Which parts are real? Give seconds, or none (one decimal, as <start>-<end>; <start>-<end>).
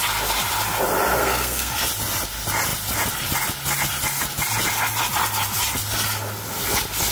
0.0-1.2; 1.7-7.1